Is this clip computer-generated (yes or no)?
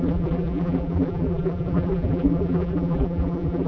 yes